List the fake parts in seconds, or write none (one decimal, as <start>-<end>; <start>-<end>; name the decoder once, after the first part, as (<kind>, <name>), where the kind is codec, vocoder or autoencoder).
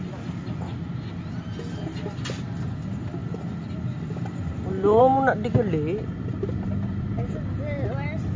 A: none